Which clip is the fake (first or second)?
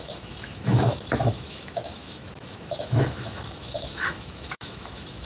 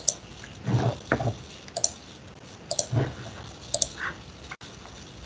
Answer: first